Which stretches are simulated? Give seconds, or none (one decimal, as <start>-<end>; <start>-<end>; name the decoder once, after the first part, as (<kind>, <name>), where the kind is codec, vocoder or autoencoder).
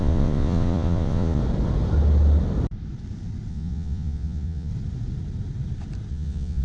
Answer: 0.0-1.4 (vocoder, Vocos); 3.5-4.7; 6.1-6.6